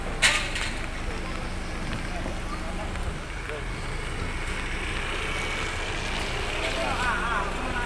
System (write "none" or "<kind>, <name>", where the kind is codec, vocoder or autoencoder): none